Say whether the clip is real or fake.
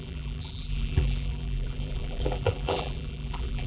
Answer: fake